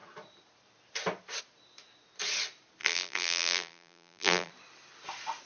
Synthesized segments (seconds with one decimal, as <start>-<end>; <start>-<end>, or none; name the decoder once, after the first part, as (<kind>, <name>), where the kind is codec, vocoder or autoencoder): 2.8-4.5 (vocoder, BigVGAN v2)